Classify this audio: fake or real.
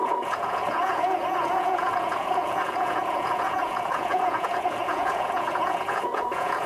fake